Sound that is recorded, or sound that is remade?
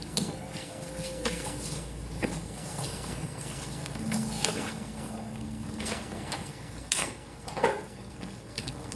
remade